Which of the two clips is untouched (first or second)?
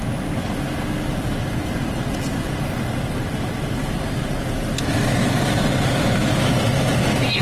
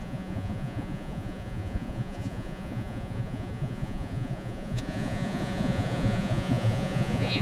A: first